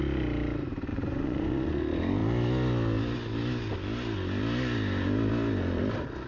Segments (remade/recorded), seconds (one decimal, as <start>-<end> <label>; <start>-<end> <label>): 0.0-0.9 recorded; 0.9-1.8 remade; 1.8-6.3 recorded